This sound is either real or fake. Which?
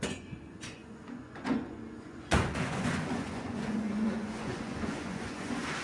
fake